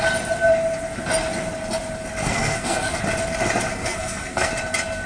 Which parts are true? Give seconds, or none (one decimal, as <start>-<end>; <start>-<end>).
0.0-2.2; 3.0-3.7; 4.5-5.1

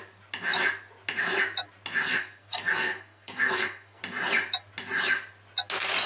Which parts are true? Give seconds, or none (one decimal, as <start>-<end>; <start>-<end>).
0.0-2.1; 4.0-6.1